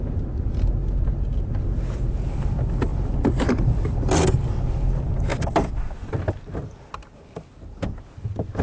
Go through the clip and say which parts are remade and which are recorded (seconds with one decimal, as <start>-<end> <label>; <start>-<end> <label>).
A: 0.0-0.8 recorded; 0.8-1.5 remade; 1.5-2.9 recorded; 2.9-4.0 remade; 4.0-5.3 recorded; 5.3-6.1 remade; 6.1-8.6 recorded